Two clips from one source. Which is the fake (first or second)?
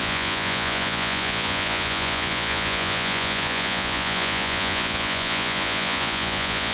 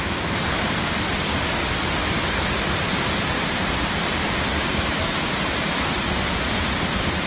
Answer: first